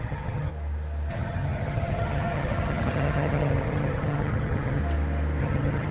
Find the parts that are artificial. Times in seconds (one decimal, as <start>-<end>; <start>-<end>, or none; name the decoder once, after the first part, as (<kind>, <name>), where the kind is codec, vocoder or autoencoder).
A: 0.0-0.5 (vocoder, HiFi-GAN); 1.1-4.8; 5.4-5.9